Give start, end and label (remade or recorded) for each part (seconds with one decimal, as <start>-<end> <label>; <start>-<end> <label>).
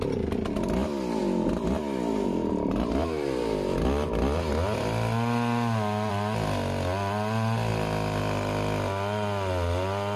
0.0-10.2 recorded